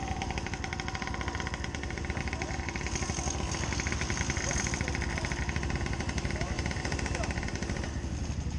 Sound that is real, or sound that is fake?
real